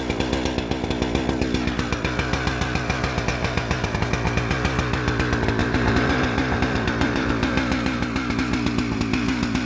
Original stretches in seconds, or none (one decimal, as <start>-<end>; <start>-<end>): 0.0-3.3; 4.1-5.6; 7.3-9.7